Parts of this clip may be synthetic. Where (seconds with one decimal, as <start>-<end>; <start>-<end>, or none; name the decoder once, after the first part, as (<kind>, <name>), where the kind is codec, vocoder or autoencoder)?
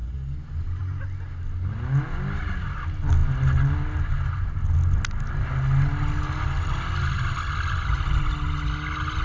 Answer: none